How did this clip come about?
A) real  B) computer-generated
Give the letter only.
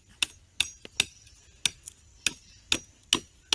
A